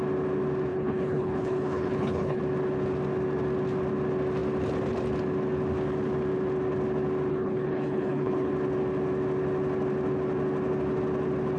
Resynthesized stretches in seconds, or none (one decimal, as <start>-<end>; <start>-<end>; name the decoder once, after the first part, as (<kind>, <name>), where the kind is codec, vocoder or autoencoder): 0.7-2.4 (codec, HILCodec); 7.3-8.5